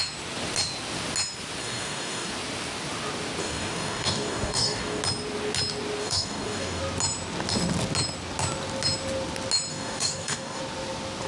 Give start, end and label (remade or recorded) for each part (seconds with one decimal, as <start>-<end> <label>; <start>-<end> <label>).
0.0-1.6 recorded; 1.6-2.3 remade; 2.3-3.4 recorded; 3.4-5.0 remade; 5.0-6.0 recorded; 6.0-6.8 remade; 6.8-9.7 recorded; 9.7-10.6 remade; 10.6-11.3 recorded